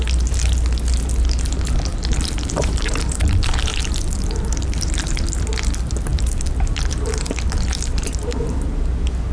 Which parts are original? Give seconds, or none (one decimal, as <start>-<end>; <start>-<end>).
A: 0.0-1.9; 5.2-6.1; 8.6-9.3